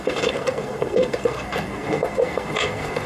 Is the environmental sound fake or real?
fake